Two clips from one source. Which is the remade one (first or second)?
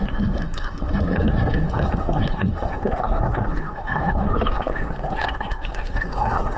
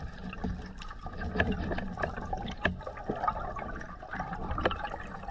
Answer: first